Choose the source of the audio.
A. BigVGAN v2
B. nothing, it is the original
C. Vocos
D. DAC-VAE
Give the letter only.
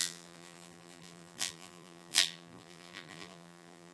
A